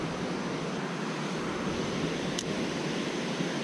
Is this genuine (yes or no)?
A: yes